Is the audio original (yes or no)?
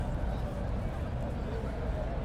yes